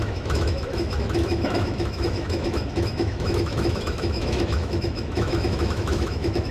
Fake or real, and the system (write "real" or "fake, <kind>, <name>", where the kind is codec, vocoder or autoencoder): fake, autoencoder, DAC-VAE